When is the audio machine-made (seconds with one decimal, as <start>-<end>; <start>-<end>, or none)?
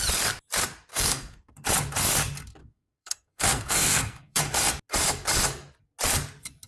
0.9-1.5; 2.6-4.4